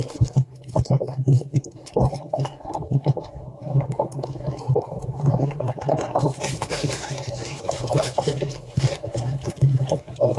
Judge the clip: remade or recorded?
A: remade